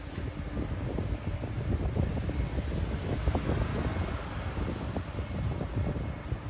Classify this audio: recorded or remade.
recorded